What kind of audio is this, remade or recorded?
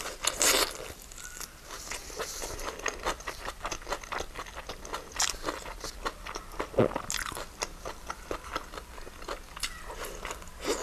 recorded